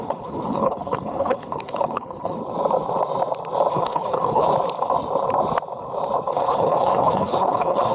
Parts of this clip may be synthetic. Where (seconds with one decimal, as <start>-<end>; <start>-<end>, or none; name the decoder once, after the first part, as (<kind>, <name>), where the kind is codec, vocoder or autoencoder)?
0.0-2.4 (codec, HILCodec); 3.7-4.5; 6.3-7.9